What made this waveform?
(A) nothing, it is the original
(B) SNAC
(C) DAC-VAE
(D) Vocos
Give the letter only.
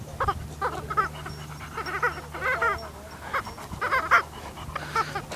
A